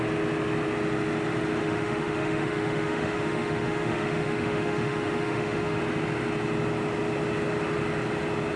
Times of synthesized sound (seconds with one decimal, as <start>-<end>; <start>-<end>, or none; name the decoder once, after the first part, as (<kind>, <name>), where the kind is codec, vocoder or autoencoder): 1.6-5.8 (autoencoder, DAC-VAE)